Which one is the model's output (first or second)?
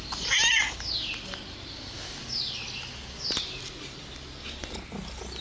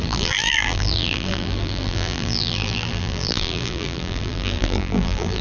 second